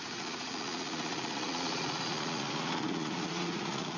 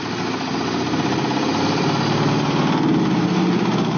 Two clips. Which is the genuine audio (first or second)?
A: second